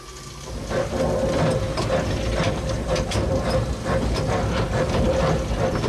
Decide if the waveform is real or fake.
real